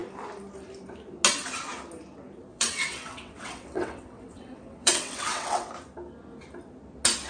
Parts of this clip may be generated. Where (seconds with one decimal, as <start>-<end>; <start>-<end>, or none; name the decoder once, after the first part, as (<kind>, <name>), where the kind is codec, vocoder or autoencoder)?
2.5-5.7 (vocoder, WaveNeXt)

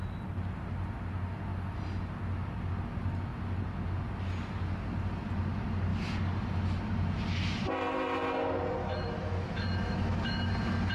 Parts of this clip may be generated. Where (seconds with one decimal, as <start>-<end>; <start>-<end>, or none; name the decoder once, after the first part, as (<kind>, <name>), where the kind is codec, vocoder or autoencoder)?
8.8-10.5 (autoencoder, DAC-VAE)

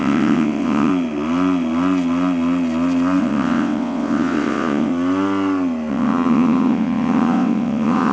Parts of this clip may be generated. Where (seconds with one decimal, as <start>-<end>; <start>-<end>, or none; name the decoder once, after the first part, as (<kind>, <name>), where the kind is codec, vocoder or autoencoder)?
0.0-0.9 (vocoder, WaveNeXt); 3.2-4.9; 5.9-8.1

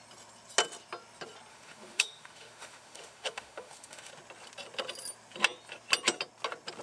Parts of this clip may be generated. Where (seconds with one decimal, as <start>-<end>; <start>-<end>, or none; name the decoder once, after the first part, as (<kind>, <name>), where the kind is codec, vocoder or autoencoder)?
1.5-4.1 (autoencoder, DAC-VAE)